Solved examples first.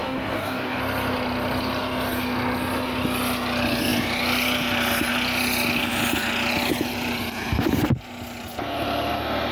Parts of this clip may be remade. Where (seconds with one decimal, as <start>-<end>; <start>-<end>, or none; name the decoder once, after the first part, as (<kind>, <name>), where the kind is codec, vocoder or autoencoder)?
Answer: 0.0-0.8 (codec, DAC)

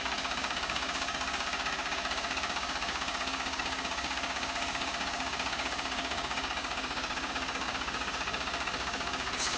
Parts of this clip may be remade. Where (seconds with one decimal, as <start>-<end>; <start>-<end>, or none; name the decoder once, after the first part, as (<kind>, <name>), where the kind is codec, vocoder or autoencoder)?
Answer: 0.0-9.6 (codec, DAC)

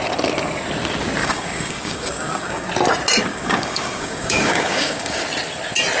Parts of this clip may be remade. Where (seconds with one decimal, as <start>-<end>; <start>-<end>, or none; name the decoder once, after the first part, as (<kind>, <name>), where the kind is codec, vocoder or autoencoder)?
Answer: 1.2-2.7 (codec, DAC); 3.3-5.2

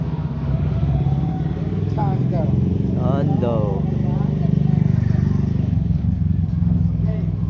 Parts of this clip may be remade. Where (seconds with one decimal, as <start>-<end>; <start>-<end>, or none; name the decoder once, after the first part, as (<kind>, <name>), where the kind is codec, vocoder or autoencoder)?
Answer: 0.0-2.0 (codec, DAC); 5.5-7.5